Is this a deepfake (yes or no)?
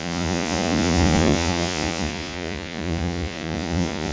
yes